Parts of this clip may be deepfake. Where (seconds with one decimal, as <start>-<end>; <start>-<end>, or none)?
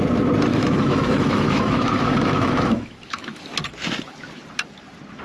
0.5-3.4